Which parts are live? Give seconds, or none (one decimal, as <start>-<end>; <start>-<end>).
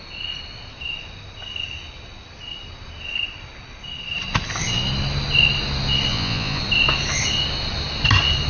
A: 0.0-6.1; 6.6-8.5